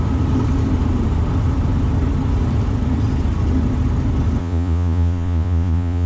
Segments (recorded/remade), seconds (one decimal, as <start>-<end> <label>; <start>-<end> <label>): 0.0-4.4 recorded; 4.4-6.1 remade